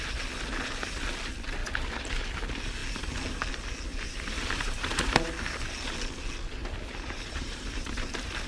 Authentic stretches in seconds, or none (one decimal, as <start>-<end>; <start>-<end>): 0.0-3.9; 5.3-6.6